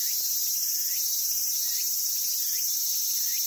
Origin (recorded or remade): recorded